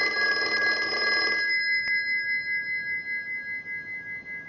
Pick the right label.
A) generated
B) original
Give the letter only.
B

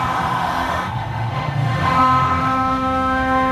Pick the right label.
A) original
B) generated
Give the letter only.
B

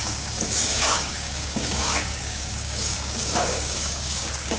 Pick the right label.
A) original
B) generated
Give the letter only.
B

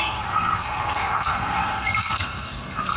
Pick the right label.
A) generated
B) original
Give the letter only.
A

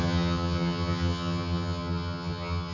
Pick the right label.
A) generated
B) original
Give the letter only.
A